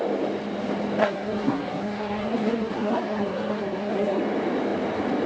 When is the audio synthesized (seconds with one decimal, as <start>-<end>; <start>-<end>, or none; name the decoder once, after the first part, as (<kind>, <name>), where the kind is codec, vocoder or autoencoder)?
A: 1.0-4.2 (codec, SNAC)

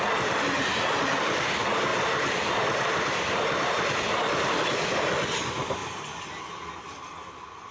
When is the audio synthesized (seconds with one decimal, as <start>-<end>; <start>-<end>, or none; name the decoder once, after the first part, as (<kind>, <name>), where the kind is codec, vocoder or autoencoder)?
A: none

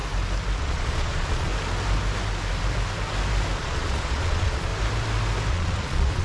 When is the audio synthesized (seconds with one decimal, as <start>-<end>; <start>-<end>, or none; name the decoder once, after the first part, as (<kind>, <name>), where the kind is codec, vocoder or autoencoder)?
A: 0.6-1.5 (vocoder, Vocos); 3.6-4.7; 5.5-6.2

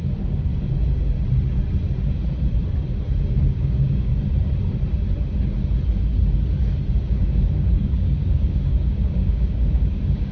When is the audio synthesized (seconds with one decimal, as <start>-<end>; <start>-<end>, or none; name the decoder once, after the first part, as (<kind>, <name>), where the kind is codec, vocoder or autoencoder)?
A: 0.0-0.5 (codec, DAC); 3.3-4.1; 7.0-10.3

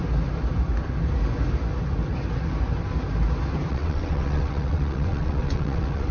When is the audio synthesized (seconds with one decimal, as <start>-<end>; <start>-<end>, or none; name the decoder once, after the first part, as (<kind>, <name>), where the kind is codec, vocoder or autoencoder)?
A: 3.7-6.1 (vocoder, WaveNeXt)

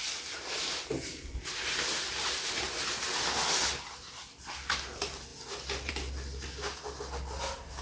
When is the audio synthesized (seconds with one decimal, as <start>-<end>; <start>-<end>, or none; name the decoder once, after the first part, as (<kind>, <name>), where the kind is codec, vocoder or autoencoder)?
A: none

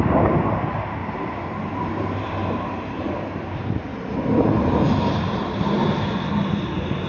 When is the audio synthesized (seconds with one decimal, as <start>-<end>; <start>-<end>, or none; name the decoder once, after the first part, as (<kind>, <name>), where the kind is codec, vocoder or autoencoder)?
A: 0.0-3.9 (vocoder, BigVGAN v2); 5.1-7.1